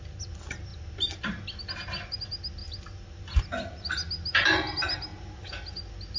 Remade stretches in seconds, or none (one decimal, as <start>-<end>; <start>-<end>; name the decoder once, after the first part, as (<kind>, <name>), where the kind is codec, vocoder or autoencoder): none